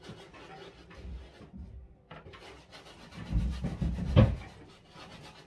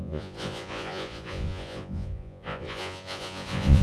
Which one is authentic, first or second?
first